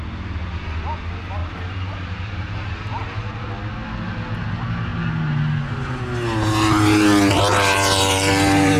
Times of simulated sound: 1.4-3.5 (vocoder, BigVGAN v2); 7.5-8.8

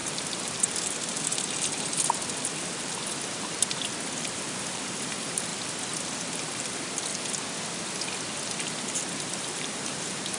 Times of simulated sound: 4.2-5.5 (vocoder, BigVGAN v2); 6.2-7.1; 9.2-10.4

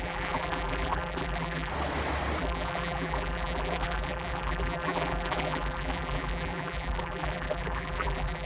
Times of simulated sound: 0.0-1.7 (vocoder, BigVGAN v2); 2.4-8.5

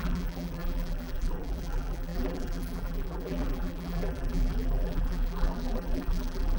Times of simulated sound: 0.0-6.6 (vocoder, BigVGAN v2)